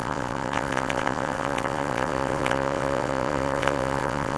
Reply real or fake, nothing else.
fake